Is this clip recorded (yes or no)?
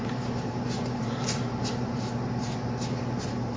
no